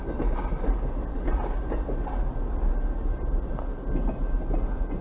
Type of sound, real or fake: real